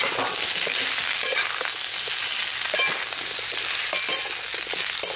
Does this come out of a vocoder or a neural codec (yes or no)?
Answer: no